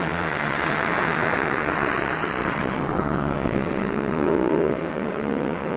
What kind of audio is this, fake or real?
fake